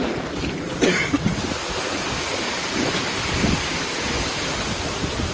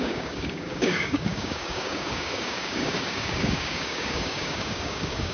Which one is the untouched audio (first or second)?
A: first